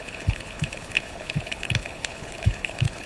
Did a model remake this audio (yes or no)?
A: yes